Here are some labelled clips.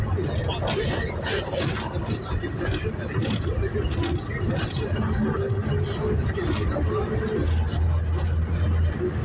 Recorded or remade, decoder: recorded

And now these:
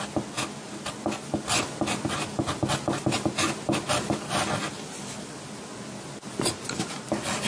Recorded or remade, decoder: recorded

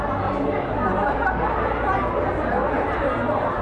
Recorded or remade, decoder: recorded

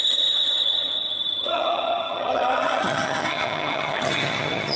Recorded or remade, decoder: remade, vocoder, HiFi-GAN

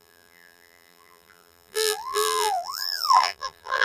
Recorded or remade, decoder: remade, vocoder, BigVGAN v2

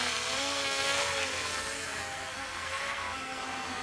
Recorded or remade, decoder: remade, codec, SNAC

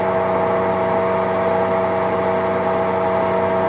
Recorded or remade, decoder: recorded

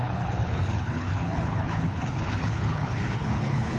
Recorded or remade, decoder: remade, codec, HILCodec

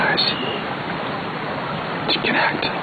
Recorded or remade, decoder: recorded